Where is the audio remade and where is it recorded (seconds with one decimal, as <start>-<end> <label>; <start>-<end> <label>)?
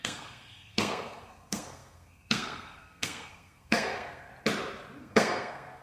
0.0-4.3 remade; 4.3-5.0 recorded; 5.0-5.8 remade